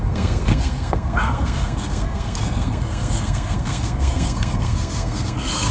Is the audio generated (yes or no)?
yes